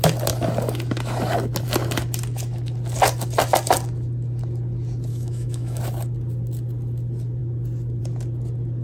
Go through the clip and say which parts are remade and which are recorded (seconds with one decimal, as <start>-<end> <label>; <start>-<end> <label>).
0.0-5.1 recorded; 5.1-5.8 remade; 5.8-8.8 recorded